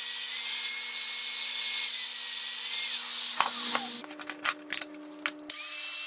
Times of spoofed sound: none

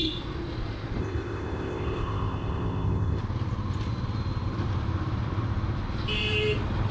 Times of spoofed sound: 1.0-3.2 (codec, ZipCodec)

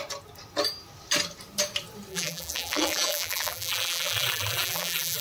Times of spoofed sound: 2.1-5.2 (vocoder, BigVGAN v2)

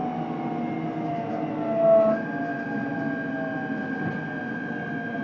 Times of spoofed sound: none

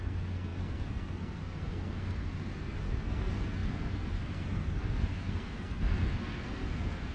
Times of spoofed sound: 0.0-7.1 (codec, SNAC)

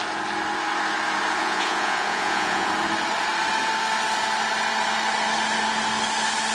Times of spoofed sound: 1.4-2.7 (vocoder, Vocos)

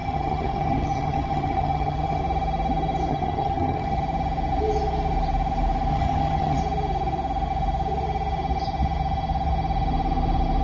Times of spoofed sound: 0.0-2.2 (vocoder, HiFi-GAN); 3.1-4.0; 5.9-6.6

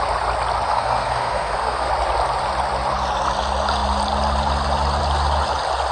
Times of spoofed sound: 0.7-1.9 (codec, SNAC)